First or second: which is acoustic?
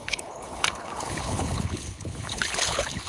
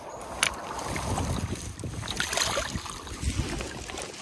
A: second